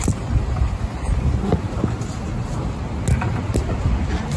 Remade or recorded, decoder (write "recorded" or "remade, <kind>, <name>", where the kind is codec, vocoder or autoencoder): recorded